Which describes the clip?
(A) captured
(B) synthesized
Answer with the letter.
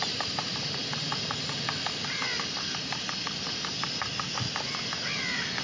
A